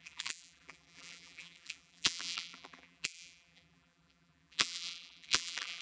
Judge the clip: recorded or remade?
remade